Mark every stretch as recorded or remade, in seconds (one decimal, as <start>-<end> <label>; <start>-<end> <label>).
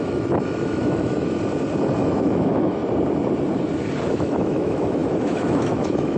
0.0-1.2 remade; 1.2-2.0 recorded; 2.0-2.8 remade; 2.8-4.1 recorded; 4.1-6.2 remade